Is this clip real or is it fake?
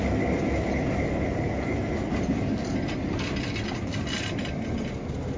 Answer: real